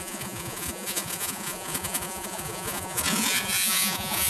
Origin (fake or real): fake